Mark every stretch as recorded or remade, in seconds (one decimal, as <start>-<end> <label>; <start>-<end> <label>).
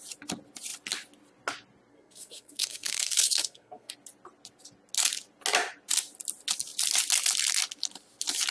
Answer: 0.0-1.9 recorded; 1.9-3.9 remade; 3.9-8.5 recorded